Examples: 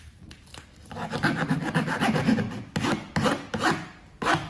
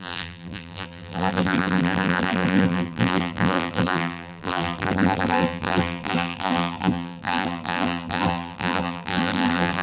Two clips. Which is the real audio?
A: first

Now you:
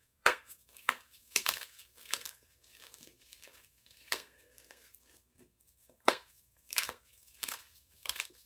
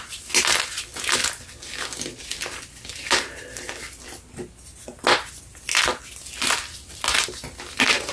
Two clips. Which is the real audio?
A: second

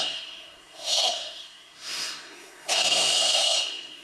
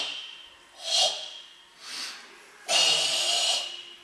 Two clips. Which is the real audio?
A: second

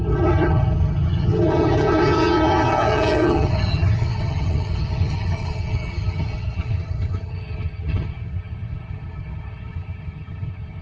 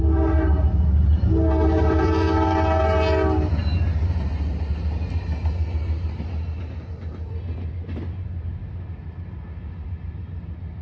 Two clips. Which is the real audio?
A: second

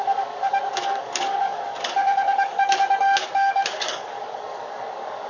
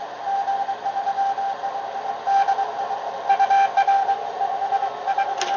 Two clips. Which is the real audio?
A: second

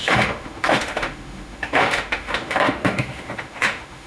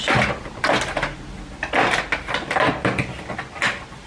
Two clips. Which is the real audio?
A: second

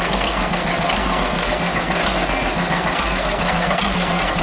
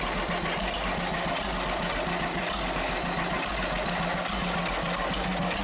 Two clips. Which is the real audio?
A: second